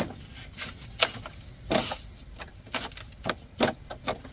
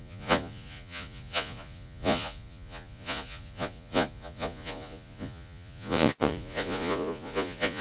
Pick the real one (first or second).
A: first